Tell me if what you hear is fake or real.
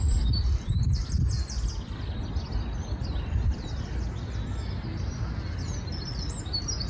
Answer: real